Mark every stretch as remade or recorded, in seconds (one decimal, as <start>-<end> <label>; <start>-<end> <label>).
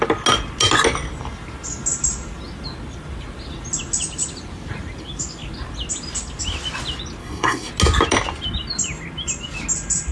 0.0-7.2 recorded; 7.2-7.7 remade; 7.7-10.1 recorded